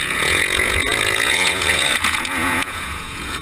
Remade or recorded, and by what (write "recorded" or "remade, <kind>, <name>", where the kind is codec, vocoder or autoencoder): remade, vocoder, Vocos